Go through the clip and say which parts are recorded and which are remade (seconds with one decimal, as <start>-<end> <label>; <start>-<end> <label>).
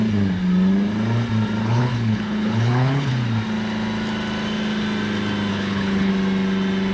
0.0-1.6 recorded; 1.6-3.1 remade; 3.1-5.5 recorded; 5.5-6.1 remade; 6.1-6.9 recorded